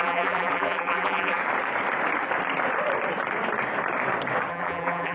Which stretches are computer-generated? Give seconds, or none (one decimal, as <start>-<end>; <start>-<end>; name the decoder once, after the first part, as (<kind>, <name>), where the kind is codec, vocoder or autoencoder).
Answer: 0.0-1.4 (vocoder, BigVGAN v2); 4.5-5.1